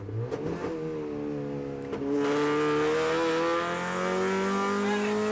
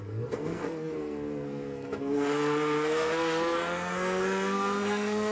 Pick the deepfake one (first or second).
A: second